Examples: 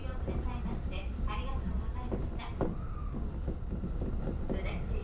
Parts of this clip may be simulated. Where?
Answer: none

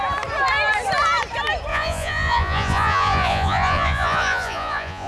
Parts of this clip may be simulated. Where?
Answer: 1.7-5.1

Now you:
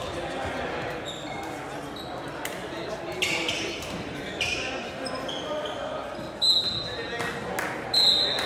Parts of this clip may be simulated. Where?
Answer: 2.6-4.7

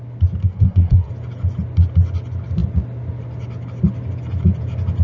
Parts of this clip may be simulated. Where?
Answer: 0.4-1.1